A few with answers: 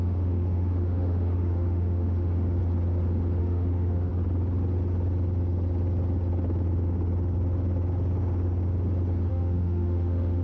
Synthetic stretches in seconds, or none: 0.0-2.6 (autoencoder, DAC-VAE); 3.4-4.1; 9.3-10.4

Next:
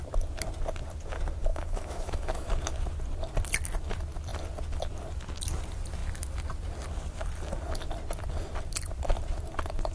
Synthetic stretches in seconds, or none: 1.5-2.5 (autoencoder, DAC-VAE)

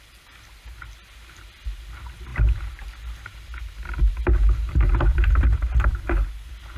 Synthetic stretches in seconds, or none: none

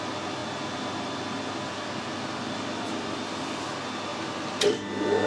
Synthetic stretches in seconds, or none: none